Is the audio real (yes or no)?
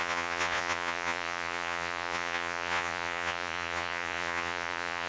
no